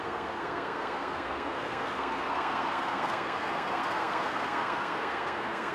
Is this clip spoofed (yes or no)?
yes